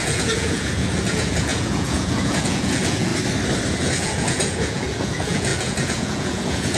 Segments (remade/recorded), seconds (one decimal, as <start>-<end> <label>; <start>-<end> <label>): 0.0-3.1 remade; 3.1-3.7 recorded; 3.7-6.8 remade